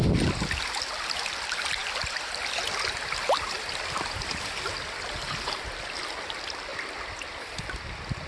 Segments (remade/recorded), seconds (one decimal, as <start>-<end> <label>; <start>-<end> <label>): 0.0-5.2 recorded; 5.2-5.7 remade; 5.7-8.3 recorded